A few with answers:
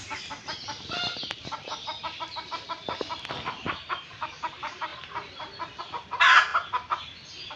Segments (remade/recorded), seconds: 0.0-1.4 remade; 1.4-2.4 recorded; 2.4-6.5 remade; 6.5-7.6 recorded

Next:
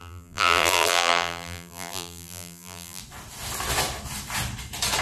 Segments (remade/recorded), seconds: 0.0-3.0 remade; 3.0-5.0 recorded

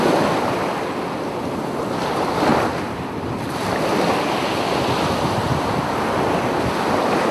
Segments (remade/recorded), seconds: 0.0-7.3 recorded

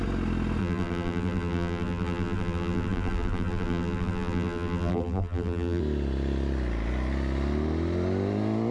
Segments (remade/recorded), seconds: 0.0-0.6 recorded; 0.6-5.8 remade; 5.8-8.7 recorded

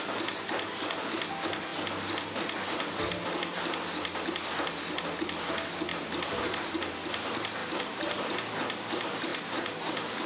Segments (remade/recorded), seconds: 0.0-5.9 recorded; 5.9-6.7 remade; 6.7-7.6 recorded; 7.6-8.3 remade; 8.3-9.3 recorded; 9.3-10.3 remade

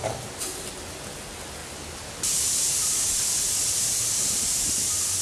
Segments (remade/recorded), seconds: 0.0-0.7 remade; 0.7-1.6 recorded; 1.6-4.7 remade; 4.7-5.2 recorded

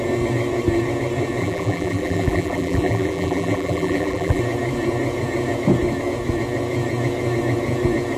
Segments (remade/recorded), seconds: 0.0-1.4 recorded; 1.4-4.4 remade; 4.4-8.2 recorded